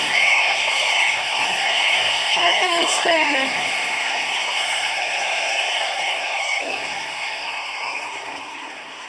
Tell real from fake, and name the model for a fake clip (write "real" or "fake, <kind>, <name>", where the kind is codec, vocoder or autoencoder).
fake, codec, SNAC